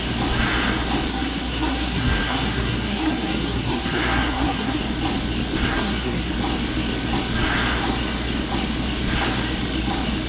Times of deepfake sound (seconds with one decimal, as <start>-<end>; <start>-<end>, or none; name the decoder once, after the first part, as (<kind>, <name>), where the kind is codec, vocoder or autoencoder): 1.1-4.8 (codec, SNAC); 5.7-6.3